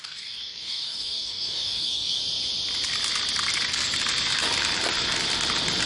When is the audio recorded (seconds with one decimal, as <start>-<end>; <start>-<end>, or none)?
2.2-5.9